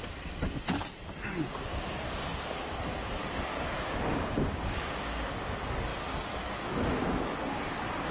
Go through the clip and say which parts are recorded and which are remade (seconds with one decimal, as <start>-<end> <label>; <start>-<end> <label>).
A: 0.0-1.7 recorded; 1.7-2.8 remade; 2.8-3.5 recorded; 3.5-5.3 remade; 5.3-8.1 recorded